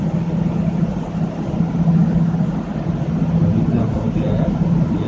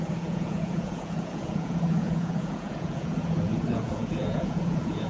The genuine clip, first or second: first